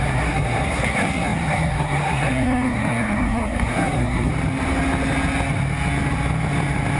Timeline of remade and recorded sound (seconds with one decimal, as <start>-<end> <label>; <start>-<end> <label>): 0.0-4.3 remade; 4.3-7.0 recorded